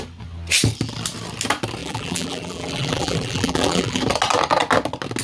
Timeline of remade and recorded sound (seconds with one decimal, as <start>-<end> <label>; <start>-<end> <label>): 0.0-1.8 recorded; 1.8-4.0 remade; 4.0-5.2 recorded